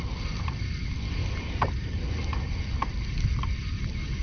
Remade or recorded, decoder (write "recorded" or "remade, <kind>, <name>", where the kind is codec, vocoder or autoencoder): recorded